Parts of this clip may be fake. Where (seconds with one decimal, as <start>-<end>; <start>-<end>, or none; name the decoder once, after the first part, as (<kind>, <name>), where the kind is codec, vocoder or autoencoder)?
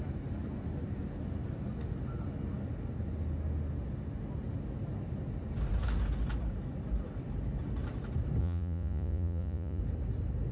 8.4-9.8 (vocoder, Vocos)